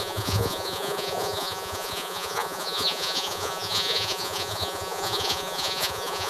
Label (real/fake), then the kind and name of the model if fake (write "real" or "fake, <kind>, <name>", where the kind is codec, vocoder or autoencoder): fake, vocoder, Vocos